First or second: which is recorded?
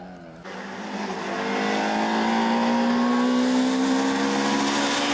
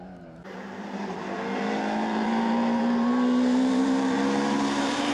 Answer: first